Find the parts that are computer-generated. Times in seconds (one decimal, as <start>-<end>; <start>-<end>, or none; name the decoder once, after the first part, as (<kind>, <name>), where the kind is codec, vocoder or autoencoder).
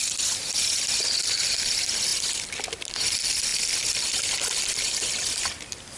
none